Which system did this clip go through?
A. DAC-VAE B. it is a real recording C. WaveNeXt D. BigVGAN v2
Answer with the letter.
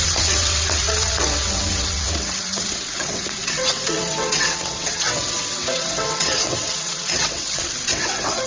C